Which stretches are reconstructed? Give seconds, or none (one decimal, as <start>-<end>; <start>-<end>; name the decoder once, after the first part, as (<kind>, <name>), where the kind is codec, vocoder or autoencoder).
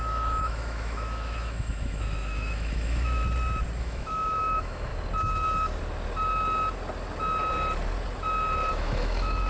0.0-3.2 (autoencoder, DAC-VAE); 3.8-4.9; 8.7-9.5